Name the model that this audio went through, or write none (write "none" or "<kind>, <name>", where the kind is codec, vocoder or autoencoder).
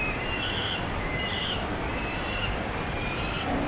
vocoder, BigVGAN v2